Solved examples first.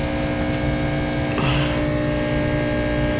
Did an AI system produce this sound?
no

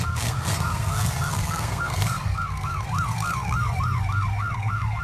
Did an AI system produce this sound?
yes